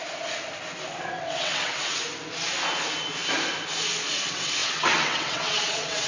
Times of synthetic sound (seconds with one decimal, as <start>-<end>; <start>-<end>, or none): 1.2-2.0; 4.1-6.1